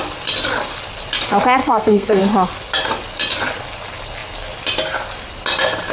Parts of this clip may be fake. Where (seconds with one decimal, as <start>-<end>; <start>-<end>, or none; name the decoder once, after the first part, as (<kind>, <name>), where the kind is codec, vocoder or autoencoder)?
1.6-2.2 (codec, SNAC)